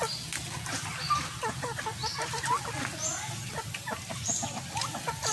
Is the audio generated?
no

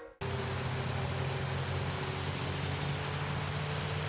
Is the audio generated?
no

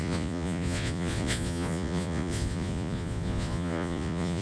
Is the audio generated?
yes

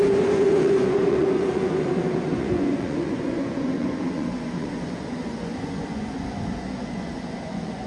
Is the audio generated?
yes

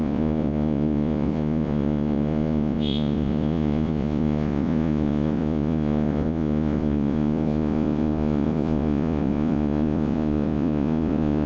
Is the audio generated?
yes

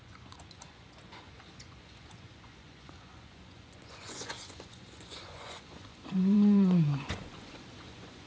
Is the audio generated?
yes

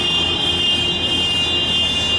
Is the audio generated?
no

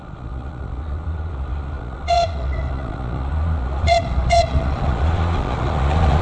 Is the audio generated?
yes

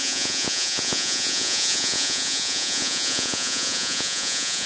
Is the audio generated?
yes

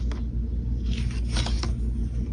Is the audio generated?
no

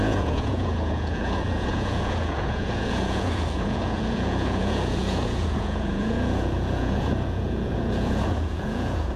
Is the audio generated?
yes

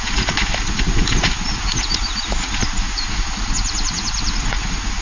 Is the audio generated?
yes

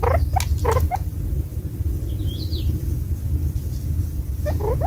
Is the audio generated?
no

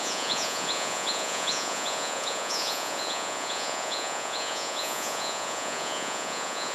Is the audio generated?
yes